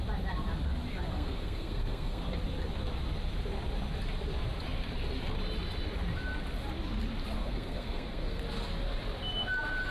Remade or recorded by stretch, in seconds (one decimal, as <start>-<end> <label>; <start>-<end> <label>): 0.0-1.1 recorded; 1.1-2.2 remade; 2.2-7.4 recorded; 7.4-8.4 remade; 8.4-9.9 recorded